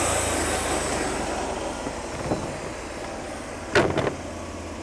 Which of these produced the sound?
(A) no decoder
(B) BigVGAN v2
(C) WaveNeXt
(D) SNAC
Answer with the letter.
A